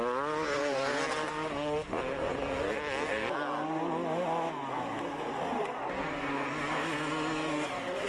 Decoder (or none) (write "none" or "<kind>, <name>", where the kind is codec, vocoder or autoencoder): none